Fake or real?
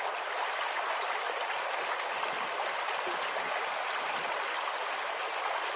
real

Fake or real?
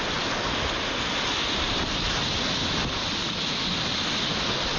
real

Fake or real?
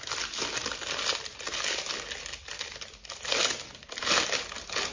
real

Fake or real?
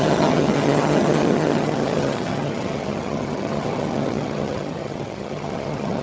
fake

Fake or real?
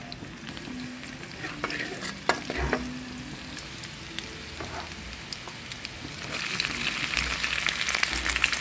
real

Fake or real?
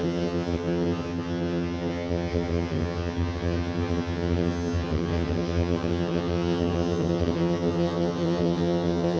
fake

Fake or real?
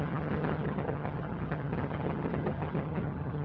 fake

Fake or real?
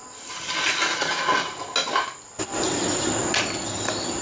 real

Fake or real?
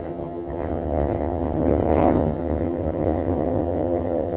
fake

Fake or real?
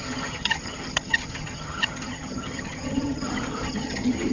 fake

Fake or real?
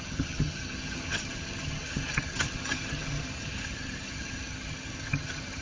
fake